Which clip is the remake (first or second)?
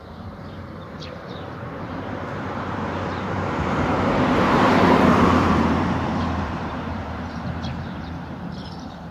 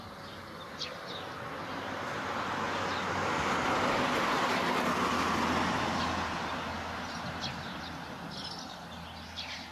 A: first